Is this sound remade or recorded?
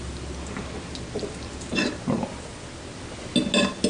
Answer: recorded